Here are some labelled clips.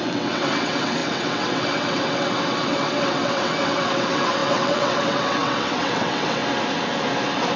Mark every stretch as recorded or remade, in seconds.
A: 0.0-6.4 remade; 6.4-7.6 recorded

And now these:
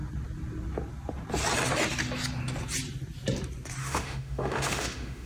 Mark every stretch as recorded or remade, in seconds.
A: 0.0-3.8 recorded; 3.8-5.3 remade

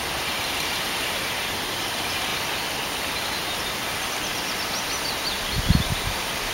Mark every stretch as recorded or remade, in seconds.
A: 0.0-2.3 remade; 2.3-5.8 recorded; 5.8-6.5 remade